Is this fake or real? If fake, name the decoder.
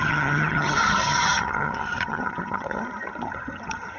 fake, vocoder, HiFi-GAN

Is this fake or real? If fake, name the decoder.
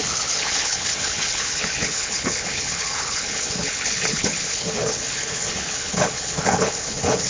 fake, codec, HILCodec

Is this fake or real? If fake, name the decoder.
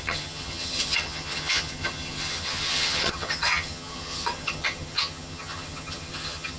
fake, vocoder, HiFi-GAN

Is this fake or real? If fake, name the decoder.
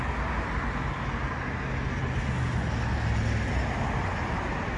real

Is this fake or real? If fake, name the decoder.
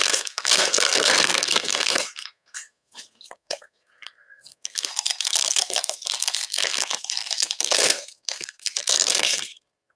fake, codec, SNAC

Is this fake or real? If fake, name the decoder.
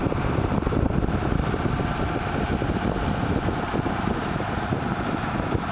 real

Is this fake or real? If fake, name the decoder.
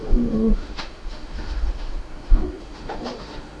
fake, autoencoder, DAC-VAE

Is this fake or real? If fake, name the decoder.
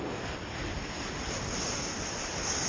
real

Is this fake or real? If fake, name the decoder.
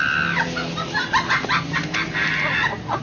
real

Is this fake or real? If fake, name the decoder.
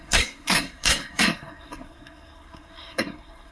fake, codec, SNAC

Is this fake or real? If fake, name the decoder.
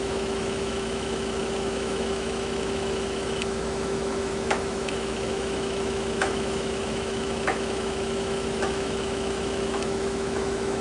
fake, autoencoder, DAC-VAE